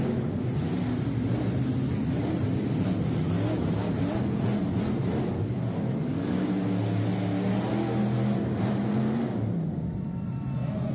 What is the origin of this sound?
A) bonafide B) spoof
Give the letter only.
A